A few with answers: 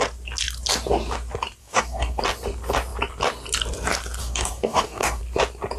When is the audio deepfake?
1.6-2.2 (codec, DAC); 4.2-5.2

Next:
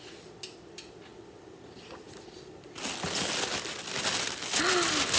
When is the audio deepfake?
none

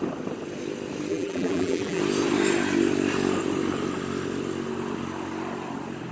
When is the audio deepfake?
1.1-2.0 (vocoder, BigVGAN v2)

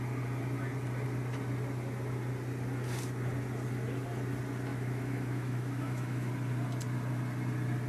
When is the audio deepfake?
4.7-6.3 (autoencoder, DAC-VAE)

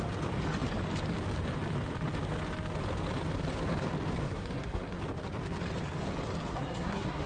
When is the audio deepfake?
4.2-5.0 (codec, SNAC); 6.5-7.3

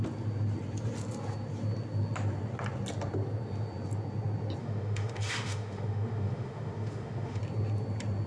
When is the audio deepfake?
4.6-7.4 (autoencoder, DAC-VAE)

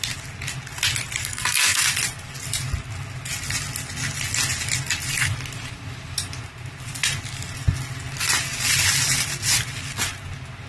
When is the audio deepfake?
1.2-1.8 (codec, SNAC)

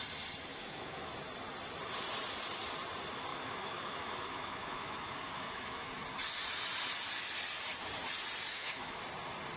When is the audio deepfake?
0.5-1.1 (autoencoder, DAC-VAE); 3.3-5.9; 8.5-9.0